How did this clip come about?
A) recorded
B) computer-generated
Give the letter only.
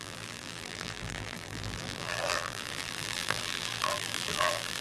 B